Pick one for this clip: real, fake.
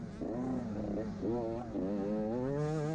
real